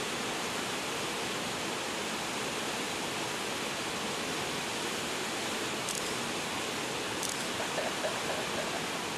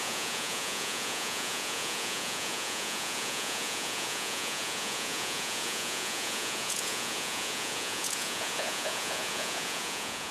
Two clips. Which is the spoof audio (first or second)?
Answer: second